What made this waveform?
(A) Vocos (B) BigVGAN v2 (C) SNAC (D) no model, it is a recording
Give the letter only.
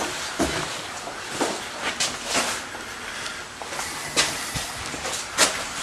D